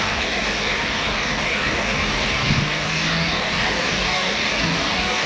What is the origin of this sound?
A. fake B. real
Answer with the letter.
A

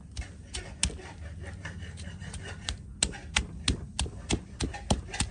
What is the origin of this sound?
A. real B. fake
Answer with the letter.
A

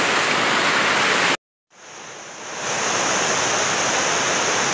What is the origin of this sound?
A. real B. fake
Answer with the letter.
A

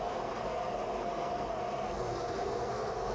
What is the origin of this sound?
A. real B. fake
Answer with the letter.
B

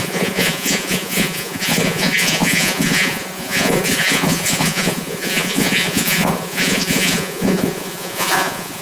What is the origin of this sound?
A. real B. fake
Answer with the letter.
B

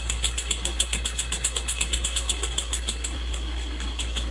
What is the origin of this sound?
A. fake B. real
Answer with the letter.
A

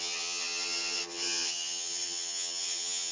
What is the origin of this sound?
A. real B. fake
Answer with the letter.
B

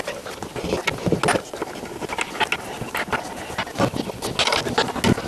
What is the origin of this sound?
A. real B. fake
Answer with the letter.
A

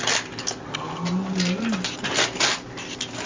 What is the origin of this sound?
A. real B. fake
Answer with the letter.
A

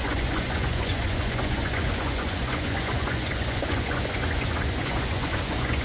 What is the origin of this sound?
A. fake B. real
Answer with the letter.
A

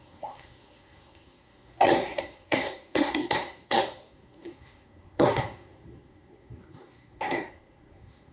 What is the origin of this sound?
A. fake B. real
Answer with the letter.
A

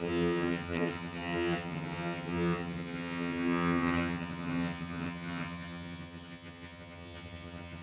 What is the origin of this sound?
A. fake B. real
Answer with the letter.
A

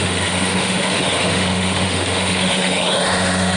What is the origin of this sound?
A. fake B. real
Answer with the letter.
A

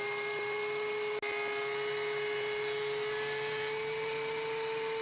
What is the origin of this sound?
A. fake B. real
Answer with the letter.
B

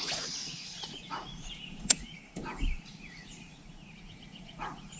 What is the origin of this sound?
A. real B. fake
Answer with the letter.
B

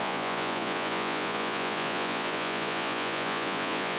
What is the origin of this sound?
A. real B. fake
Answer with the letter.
B